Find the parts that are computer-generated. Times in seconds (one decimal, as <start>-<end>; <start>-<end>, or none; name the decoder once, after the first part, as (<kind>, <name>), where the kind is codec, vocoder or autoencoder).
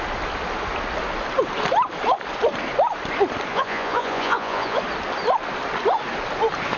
3.5-4.8 (vocoder, Vocos)